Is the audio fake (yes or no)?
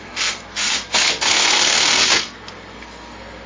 yes